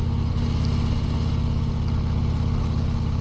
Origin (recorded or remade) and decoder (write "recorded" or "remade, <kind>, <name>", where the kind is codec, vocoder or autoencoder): recorded